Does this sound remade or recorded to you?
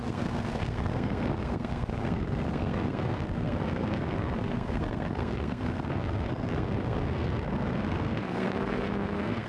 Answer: remade